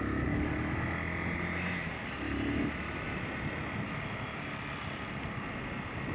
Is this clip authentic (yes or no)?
yes